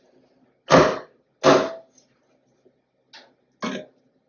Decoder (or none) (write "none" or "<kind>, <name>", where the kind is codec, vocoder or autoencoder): none